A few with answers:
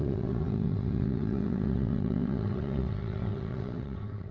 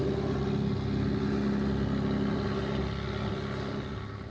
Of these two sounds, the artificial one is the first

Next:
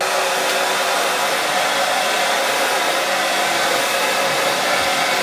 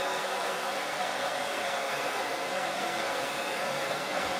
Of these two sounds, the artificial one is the second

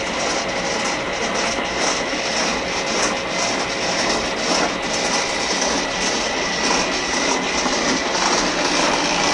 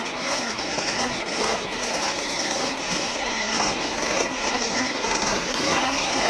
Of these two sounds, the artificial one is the second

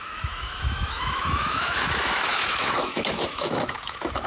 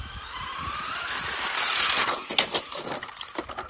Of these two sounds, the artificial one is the first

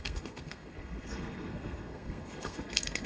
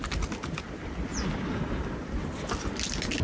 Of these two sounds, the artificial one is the first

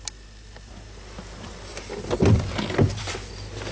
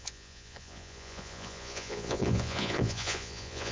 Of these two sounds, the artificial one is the second